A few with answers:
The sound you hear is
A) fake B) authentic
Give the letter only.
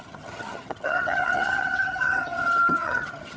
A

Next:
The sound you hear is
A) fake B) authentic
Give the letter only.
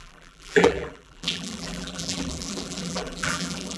A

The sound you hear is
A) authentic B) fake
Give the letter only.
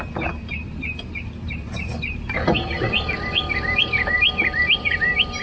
B